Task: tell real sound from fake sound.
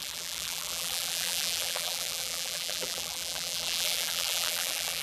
fake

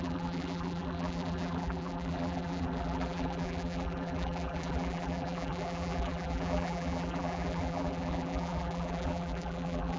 fake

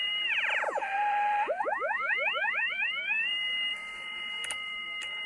fake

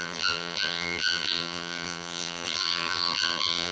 fake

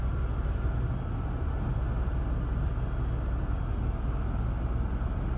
real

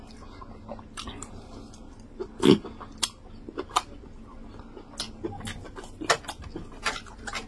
real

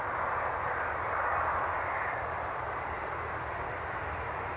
fake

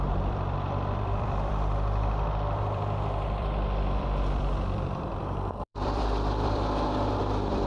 fake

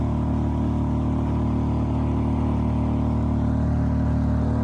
real